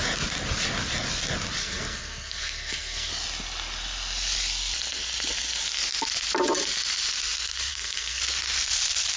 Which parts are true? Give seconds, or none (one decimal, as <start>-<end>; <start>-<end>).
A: 0.0-1.6; 3.1-7.7; 8.2-9.2